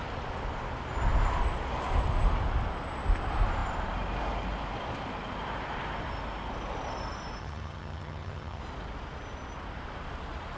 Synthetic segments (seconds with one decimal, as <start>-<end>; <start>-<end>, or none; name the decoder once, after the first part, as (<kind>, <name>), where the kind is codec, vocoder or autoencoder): 7.4-8.6 (vocoder, HiFi-GAN)